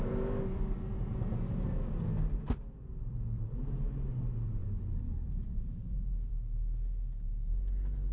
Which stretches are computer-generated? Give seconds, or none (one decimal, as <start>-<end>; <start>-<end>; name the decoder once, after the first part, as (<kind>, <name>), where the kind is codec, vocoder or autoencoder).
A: 4.6-6.3 (vocoder, BigVGAN v2)